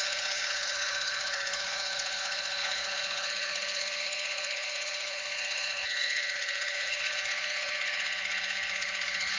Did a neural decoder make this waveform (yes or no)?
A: yes